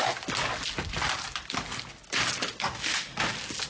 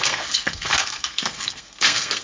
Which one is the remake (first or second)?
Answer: second